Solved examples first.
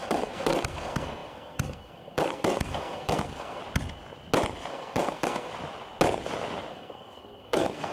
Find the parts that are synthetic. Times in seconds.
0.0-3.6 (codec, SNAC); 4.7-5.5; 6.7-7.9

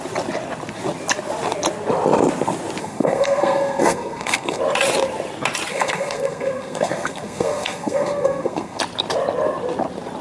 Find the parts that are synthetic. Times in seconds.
2.8-4.6 (codec, SNAC); 5.7-8.8

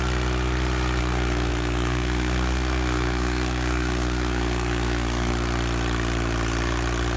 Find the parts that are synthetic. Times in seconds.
1.0-5.3 (codec, SNAC)

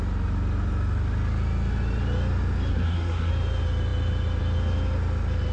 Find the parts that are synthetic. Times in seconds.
2.7-3.3 (codec, SNAC)